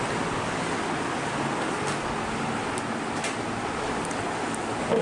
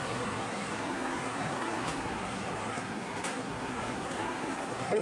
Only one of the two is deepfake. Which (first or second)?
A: second